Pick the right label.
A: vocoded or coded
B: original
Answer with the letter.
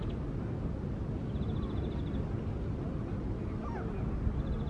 B